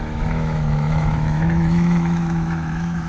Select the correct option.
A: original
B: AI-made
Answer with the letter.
B